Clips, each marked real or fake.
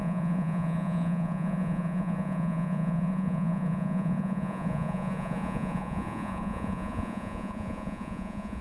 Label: fake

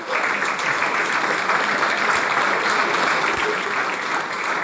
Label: real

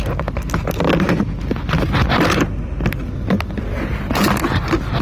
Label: real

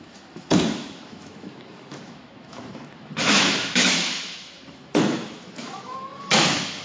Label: fake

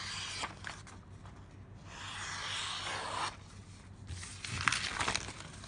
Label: real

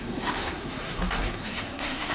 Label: fake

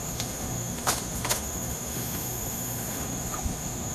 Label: fake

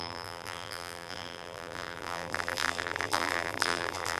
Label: fake